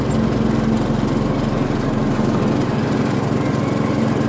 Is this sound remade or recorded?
recorded